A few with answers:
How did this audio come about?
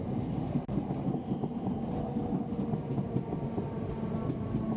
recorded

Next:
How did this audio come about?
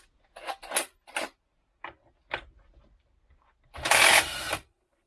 recorded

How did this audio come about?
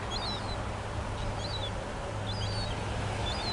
recorded